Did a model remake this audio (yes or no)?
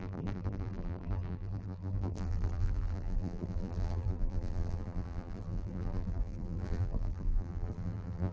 yes